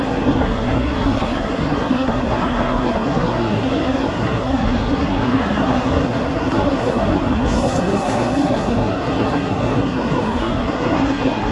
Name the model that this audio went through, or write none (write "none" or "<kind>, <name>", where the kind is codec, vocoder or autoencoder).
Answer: codec, SNAC